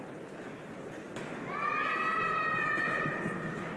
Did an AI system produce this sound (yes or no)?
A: no